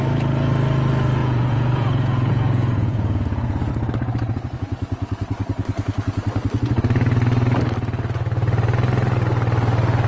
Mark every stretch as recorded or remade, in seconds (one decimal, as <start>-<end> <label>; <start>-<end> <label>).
0.0-1.2 recorded; 1.2-3.7 remade; 3.7-10.1 recorded